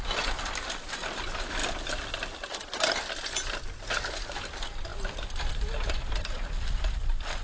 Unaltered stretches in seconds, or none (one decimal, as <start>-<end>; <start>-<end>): 0.0-7.4